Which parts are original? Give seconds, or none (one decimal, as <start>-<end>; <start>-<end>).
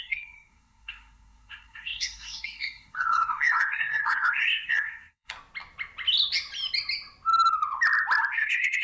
5.3-8.3